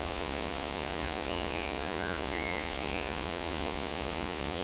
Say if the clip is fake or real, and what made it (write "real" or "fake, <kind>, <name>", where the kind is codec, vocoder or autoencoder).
fake, vocoder, Vocos